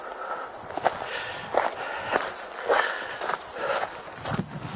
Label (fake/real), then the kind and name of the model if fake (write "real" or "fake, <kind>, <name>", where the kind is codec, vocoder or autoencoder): real